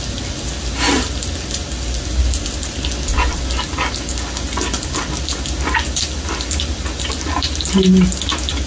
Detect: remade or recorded recorded